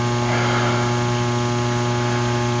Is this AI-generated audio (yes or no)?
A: no